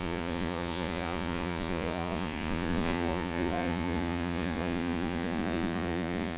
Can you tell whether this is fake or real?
fake